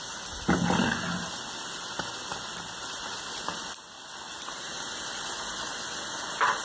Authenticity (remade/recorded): recorded